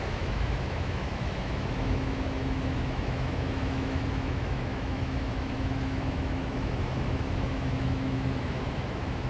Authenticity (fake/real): fake